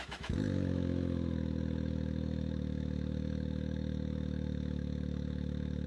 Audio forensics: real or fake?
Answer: fake